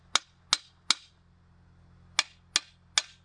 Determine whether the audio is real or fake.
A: real